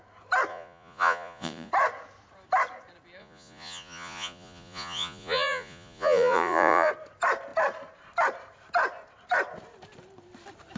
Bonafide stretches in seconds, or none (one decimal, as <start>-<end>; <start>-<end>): 0.0-0.5; 1.7-3.2; 6.9-10.8